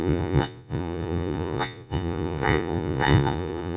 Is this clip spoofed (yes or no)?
yes